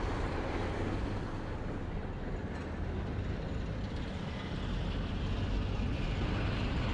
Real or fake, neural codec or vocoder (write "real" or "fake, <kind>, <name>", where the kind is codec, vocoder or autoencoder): real